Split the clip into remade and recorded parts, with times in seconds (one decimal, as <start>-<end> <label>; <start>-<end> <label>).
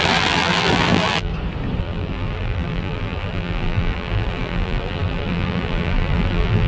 0.0-1.3 remade; 1.3-1.8 recorded; 1.8-6.7 remade